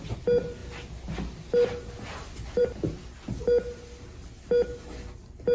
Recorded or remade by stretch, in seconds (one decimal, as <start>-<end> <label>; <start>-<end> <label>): 0.0-5.5 recorded